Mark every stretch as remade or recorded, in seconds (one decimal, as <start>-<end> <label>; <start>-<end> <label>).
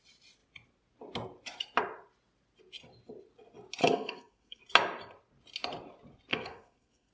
0.0-3.8 recorded; 3.8-4.6 remade; 4.6-6.3 recorded; 6.3-7.1 remade